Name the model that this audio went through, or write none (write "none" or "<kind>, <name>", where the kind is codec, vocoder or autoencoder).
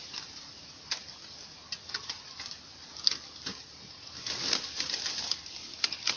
none